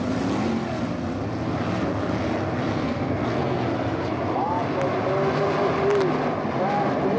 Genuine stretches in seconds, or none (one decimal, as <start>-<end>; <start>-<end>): 0.0-2.7; 3.6-7.2